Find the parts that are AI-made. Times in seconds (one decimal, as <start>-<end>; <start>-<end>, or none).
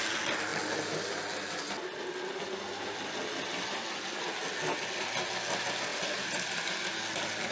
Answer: none